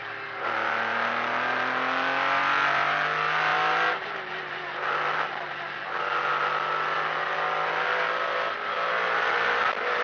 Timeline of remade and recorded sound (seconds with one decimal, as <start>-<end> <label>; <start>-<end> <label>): 0.0-10.0 recorded